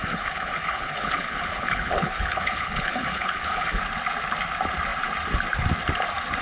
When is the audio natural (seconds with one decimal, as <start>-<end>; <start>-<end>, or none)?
3.8-6.4